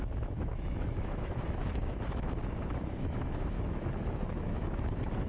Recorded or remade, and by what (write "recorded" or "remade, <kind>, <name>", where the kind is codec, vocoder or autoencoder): remade, autoencoder, DAC-VAE